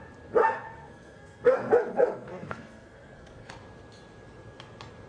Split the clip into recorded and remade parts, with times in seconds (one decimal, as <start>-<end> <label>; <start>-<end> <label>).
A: 0.0-0.4 recorded; 0.4-3.5 remade; 3.5-5.1 recorded